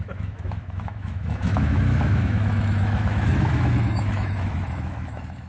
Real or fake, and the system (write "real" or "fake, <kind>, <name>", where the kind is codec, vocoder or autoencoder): fake, autoencoder, DAC-VAE